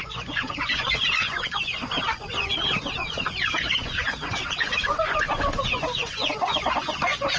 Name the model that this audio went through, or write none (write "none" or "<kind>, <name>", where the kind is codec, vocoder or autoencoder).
vocoder, Vocos